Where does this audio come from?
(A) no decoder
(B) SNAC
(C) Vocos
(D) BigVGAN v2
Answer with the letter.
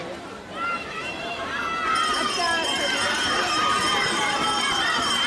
D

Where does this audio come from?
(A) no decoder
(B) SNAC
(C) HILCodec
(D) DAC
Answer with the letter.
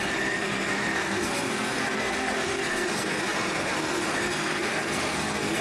B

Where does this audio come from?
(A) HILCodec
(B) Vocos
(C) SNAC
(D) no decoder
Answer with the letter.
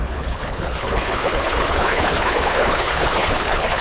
A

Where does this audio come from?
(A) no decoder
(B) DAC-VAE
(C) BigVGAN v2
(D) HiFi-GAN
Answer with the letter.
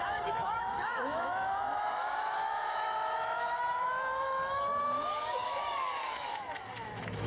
B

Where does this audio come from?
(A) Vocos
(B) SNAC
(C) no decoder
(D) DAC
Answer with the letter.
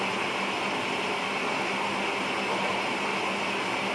C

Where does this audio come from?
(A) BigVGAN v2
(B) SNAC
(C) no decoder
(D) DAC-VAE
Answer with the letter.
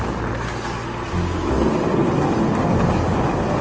C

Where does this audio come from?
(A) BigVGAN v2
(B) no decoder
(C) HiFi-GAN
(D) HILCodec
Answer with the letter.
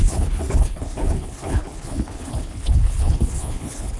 D